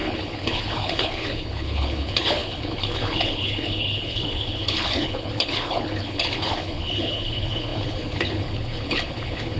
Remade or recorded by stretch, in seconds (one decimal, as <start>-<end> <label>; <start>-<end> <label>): 0.0-9.6 remade